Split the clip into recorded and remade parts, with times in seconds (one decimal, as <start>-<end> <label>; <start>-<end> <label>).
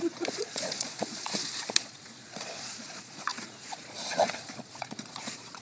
0.0-5.6 remade